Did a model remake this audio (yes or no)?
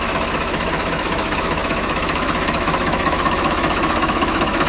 yes